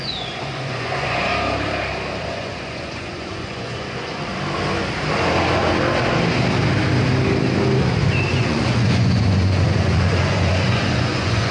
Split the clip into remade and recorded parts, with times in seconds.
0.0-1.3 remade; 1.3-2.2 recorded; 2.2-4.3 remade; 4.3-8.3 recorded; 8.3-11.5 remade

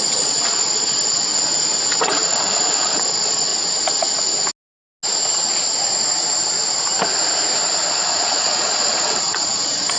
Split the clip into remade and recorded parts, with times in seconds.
0.0-1.3 remade; 1.3-2.0 recorded; 2.0-3.5 remade; 3.5-7.9 recorded; 7.9-10.0 remade